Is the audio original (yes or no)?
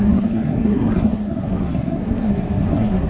no